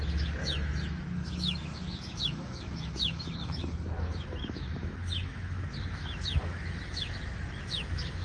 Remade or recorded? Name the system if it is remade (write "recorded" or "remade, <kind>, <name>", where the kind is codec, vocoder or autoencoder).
remade, autoencoder, DAC-VAE